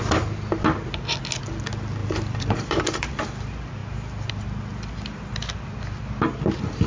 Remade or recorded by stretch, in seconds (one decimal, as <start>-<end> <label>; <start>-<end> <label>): 0.0-2.0 recorded; 2.0-3.2 remade; 3.2-6.9 recorded